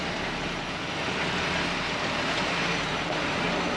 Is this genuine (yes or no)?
yes